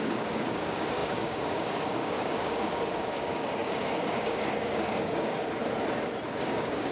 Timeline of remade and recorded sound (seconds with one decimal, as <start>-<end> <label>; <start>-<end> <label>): 0.0-5.4 remade; 5.4-6.4 recorded; 6.4-6.9 remade